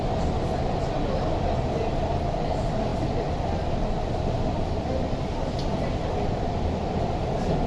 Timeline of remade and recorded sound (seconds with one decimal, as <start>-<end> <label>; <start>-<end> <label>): 0.0-7.7 recorded